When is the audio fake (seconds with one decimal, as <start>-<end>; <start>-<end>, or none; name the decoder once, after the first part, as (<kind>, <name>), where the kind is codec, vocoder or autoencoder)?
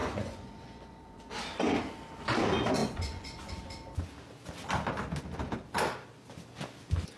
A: 0.0-1.3 (vocoder, Vocos); 2.8-3.5